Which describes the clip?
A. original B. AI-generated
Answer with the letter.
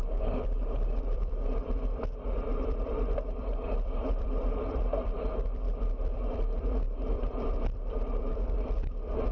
B